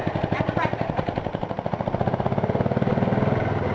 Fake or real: real